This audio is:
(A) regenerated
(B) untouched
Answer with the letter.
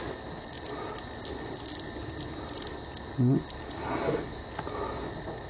B